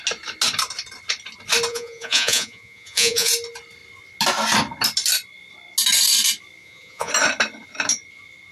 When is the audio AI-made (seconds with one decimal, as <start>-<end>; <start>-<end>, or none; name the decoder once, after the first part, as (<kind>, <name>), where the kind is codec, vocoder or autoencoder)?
1.7-3.3 (vocoder, Vocos); 6.6-7.1